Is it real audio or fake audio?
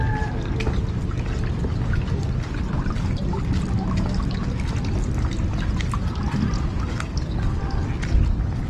real